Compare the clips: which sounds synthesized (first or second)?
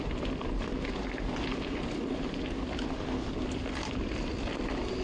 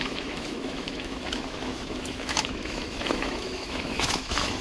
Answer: second